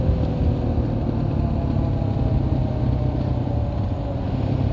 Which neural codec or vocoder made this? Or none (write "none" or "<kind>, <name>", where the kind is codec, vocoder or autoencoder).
none